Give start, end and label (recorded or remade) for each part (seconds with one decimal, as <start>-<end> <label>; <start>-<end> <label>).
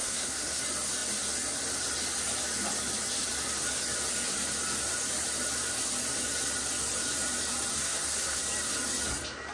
0.0-0.6 remade; 0.6-7.7 recorded; 7.7-8.4 remade; 8.4-9.5 recorded